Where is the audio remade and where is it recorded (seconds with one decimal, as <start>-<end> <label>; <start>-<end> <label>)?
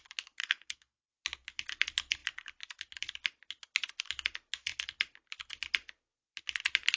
0.0-0.4 recorded; 0.4-1.1 remade; 1.1-7.0 recorded